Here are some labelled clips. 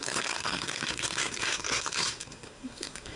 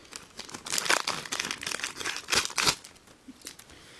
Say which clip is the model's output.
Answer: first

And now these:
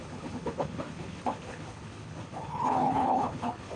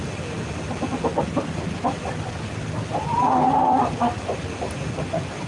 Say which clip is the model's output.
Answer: first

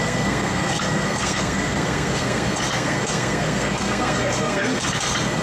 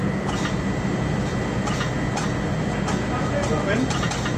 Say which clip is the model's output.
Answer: first